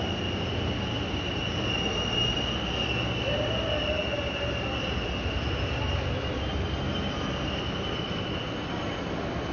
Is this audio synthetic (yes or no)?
no